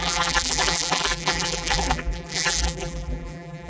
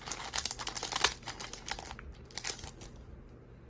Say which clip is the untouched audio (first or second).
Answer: second